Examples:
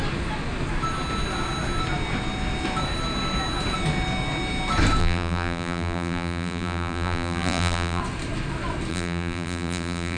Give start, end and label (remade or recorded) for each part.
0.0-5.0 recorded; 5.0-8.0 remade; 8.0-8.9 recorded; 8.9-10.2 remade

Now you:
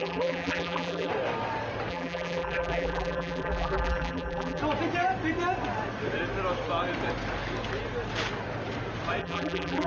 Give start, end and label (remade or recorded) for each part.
0.0-1.1 remade; 1.1-1.9 recorded; 1.9-4.6 remade; 4.6-9.2 recorded; 9.2-9.9 remade

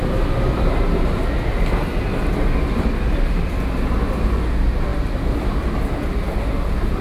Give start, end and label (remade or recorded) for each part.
0.0-7.0 recorded

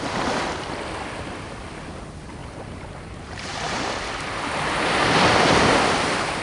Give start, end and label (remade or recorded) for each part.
0.0-2.4 recorded; 2.4-3.9 remade; 3.9-6.4 recorded